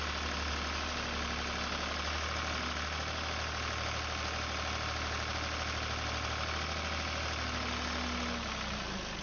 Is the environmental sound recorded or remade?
recorded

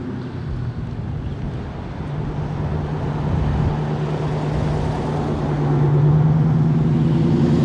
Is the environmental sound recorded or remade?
recorded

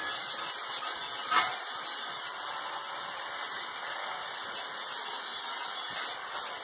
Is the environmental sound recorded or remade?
recorded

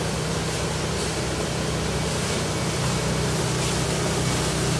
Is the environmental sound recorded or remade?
recorded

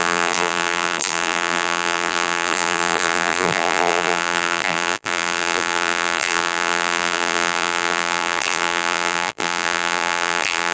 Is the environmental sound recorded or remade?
remade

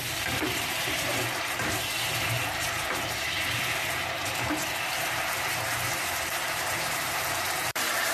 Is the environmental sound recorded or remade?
remade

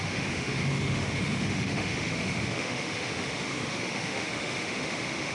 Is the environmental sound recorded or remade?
remade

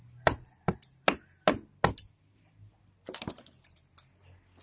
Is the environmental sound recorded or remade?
recorded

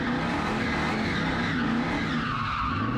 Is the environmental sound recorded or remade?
recorded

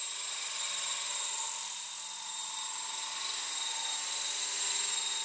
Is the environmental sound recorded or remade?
recorded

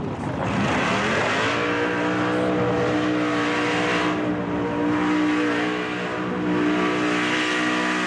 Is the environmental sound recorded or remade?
recorded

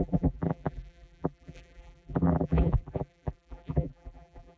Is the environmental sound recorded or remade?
remade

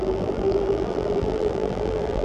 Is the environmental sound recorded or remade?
remade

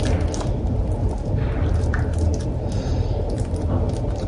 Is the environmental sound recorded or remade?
recorded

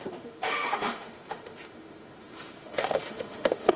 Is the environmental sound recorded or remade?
remade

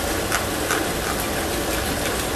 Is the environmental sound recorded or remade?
remade